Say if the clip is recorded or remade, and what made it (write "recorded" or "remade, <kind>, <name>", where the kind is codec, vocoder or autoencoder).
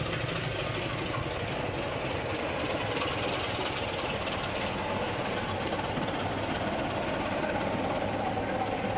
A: recorded